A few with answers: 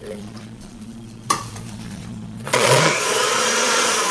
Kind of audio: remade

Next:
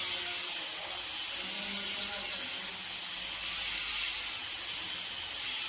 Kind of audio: recorded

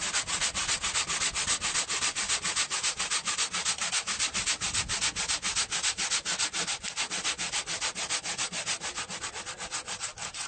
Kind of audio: recorded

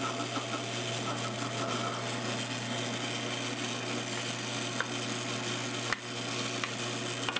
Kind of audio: recorded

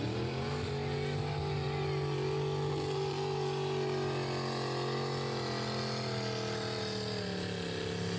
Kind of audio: recorded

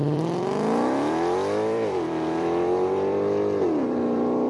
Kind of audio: remade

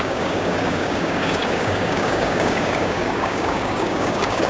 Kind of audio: remade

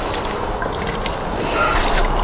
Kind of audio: recorded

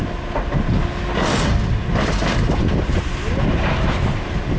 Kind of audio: recorded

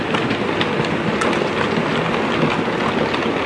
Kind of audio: recorded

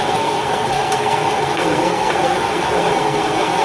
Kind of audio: remade